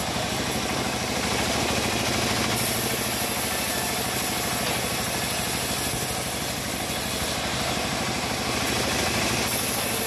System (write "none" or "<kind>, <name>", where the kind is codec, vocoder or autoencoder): none